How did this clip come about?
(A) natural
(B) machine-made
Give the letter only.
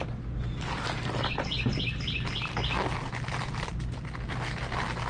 A